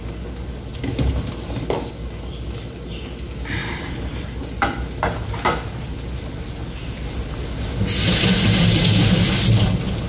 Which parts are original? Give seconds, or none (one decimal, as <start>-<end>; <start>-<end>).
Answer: 0.0-0.7; 1.9-3.6; 6.1-10.1